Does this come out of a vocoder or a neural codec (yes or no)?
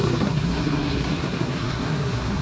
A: yes